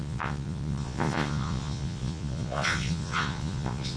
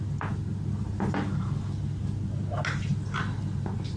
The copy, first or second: first